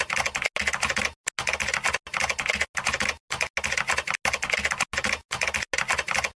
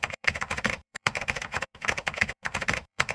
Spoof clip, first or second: second